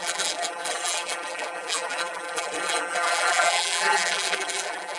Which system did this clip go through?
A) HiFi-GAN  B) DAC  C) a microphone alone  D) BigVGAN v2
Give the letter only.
D